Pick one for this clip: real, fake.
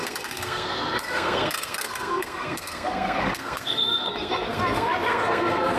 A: fake